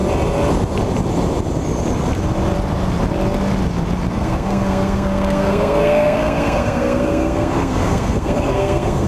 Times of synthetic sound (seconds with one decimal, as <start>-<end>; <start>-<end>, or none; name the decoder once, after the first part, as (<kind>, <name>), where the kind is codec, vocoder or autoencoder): 4.1-9.1 (codec, SNAC)